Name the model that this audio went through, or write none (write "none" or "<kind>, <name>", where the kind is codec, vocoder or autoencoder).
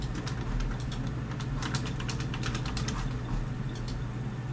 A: none